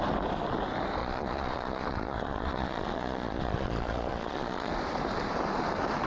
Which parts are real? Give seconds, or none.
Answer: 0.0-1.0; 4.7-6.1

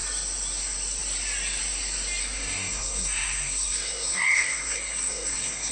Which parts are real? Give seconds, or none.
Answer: 0.0-2.2

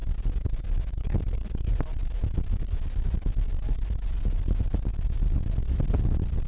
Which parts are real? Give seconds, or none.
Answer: 0.0-6.5